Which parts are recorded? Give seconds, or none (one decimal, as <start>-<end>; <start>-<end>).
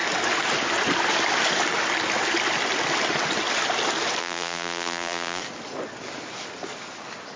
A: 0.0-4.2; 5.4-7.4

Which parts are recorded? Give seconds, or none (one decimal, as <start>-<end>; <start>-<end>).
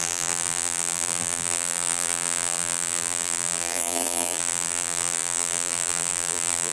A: none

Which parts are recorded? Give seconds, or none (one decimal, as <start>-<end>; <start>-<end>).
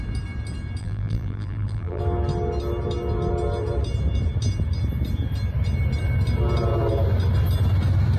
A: 0.0-0.8; 2.0-8.2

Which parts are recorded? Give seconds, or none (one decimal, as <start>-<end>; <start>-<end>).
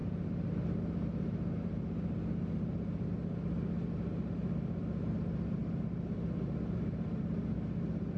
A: 0.0-8.2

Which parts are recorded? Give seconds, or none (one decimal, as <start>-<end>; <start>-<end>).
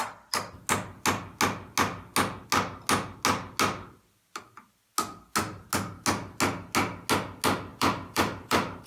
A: 0.0-7.7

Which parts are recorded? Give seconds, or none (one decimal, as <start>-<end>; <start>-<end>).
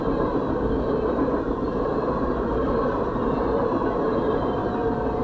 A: 0.0-1.5; 1.9-3.6; 4.6-5.2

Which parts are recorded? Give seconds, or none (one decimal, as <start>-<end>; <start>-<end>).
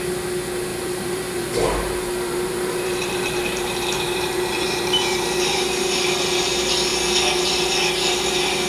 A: 0.0-0.7; 5.6-8.7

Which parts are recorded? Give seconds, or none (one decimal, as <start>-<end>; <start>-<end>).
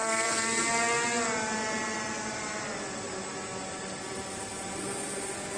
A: 0.6-4.1; 4.8-5.6